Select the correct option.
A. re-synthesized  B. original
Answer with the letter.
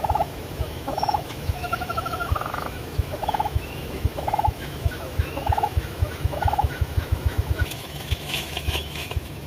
A